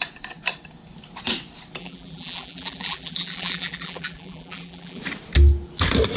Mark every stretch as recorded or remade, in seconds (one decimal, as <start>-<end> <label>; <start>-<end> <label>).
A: 0.0-1.8 recorded; 1.8-5.0 remade; 5.0-6.2 recorded